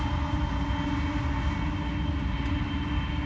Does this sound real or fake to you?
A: real